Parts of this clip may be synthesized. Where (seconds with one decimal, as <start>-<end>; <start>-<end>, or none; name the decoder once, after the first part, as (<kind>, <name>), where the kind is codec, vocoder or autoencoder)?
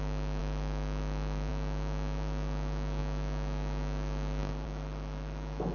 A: 0.0-5.7 (autoencoder, DAC-VAE)